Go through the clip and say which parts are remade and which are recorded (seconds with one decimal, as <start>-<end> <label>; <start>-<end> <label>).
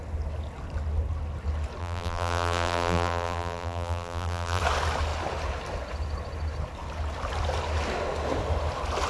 0.0-1.8 recorded; 1.8-4.6 remade; 4.6-9.1 recorded